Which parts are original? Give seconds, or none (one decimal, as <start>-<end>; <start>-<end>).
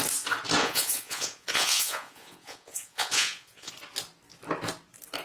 0.0-0.6; 3.7-5.2